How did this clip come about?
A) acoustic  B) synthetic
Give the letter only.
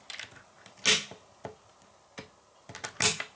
A